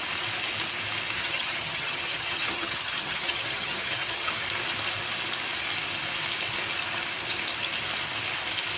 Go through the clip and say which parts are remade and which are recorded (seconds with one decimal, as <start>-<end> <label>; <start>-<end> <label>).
0.0-1.2 recorded; 1.2-4.3 remade; 4.3-8.8 recorded